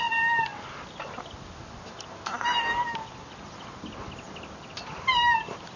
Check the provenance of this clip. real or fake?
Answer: real